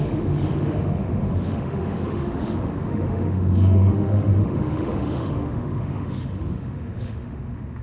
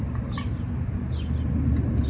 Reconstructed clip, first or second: first